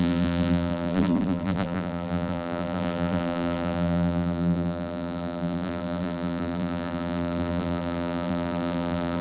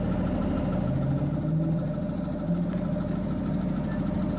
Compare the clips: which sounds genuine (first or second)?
second